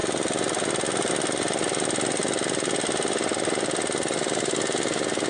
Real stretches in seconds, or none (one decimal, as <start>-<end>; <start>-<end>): 0.0-5.3